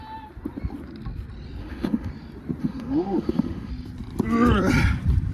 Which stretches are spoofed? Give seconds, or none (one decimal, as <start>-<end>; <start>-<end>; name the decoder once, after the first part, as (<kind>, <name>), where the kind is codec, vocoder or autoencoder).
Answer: 1.6-2.1 (autoencoder, DAC-VAE); 2.6-3.7